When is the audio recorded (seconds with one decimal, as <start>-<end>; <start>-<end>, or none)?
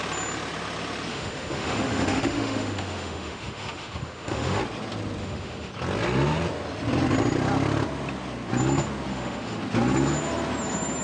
0.0-1.1; 4.6-5.2; 5.7-9.1; 9.6-11.0